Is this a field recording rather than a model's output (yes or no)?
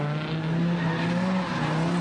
yes